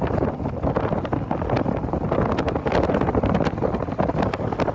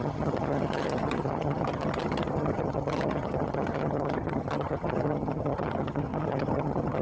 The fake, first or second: second